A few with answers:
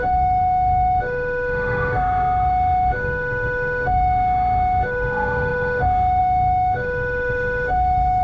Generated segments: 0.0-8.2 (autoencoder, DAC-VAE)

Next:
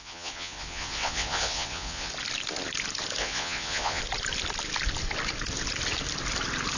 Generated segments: 0.0-2.1 (vocoder, Vocos); 3.2-4.0

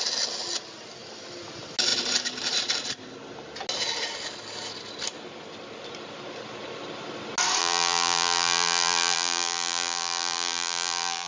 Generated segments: 7.6-11.3 (vocoder, BigVGAN v2)

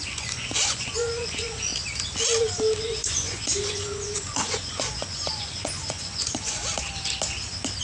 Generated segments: 0.0-1.7 (vocoder, Vocos); 2.8-6.6

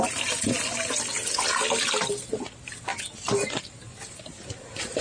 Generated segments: none

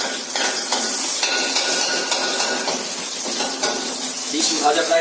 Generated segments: 4.2-5.0 (autoencoder, DAC-VAE)

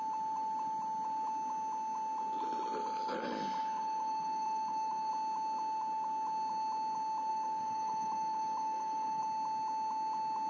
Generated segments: 3.6-5.1 (codec, DAC); 7.3-9.2

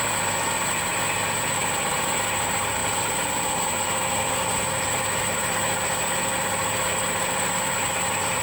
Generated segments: 0.0-2.8 (vocoder, BigVGAN v2); 4.0-8.4